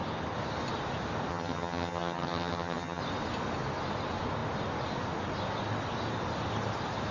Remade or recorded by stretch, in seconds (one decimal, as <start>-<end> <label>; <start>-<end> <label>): 0.0-1.3 recorded; 1.3-3.0 remade; 3.0-7.1 recorded